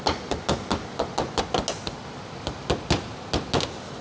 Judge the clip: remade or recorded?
recorded